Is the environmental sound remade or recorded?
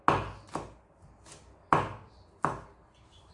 recorded